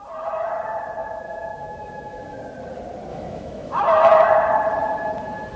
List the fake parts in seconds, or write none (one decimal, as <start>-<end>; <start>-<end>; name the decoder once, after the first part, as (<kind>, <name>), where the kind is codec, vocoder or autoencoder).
1.0-2.4 (autoencoder, DAC-VAE); 3.1-3.8